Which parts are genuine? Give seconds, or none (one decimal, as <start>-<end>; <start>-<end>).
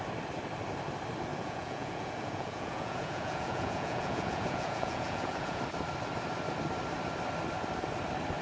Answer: 0.0-1.3; 5.6-8.4